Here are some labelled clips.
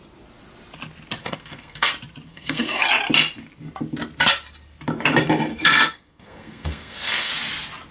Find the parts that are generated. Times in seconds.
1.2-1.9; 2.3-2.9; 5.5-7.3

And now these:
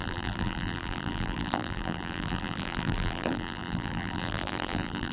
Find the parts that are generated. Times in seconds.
0.0-5.1

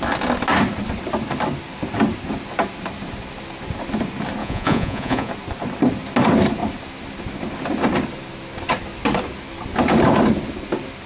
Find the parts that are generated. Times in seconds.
4.4-5.3

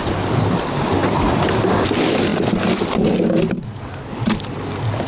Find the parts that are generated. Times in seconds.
none